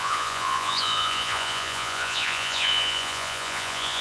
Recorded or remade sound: remade